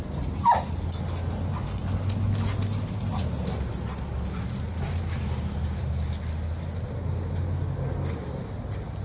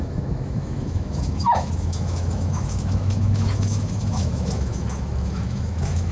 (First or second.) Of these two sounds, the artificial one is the second